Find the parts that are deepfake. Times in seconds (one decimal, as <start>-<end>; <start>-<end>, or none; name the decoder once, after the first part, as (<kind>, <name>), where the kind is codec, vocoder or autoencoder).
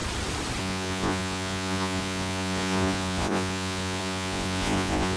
0.6-5.2 (vocoder, Vocos)